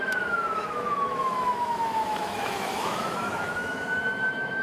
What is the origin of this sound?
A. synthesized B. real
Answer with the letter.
A